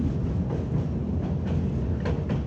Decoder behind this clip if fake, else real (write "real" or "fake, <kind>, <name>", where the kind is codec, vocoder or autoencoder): real